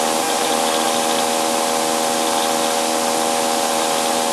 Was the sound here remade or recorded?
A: recorded